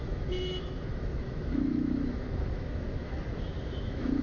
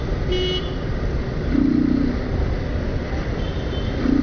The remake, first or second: first